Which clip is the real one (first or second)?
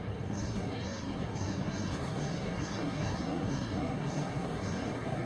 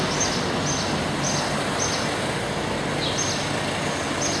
second